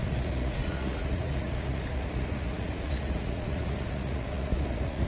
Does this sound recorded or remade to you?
remade